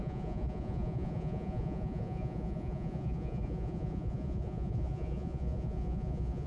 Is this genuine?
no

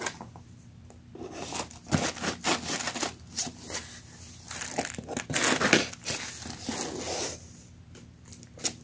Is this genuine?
yes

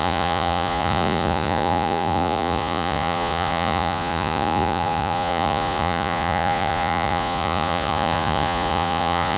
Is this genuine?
no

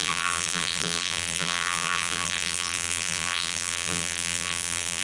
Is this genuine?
no